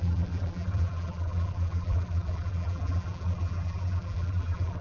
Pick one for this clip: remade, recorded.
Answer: remade